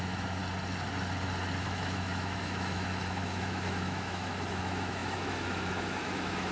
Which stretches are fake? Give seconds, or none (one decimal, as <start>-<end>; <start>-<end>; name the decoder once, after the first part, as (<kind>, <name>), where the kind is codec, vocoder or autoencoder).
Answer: 0.0-0.4 (autoencoder, DAC-VAE); 1.6-6.5